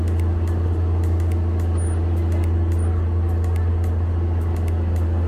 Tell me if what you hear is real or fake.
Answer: real